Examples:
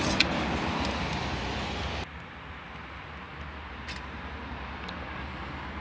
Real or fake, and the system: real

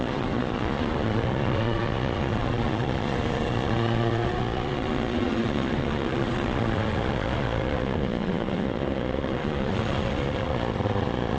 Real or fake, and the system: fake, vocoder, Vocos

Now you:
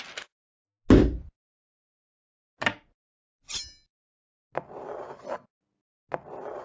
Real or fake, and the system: real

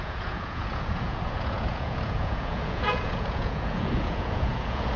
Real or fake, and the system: fake, vocoder, Vocos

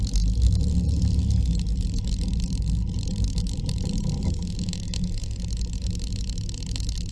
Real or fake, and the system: real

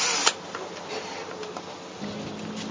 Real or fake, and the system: real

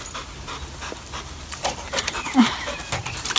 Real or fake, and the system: real